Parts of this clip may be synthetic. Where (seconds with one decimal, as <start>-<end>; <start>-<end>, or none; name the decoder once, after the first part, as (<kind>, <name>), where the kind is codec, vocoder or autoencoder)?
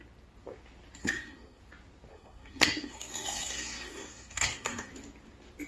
1.0-1.6 (codec, SNAC); 2.1-4.9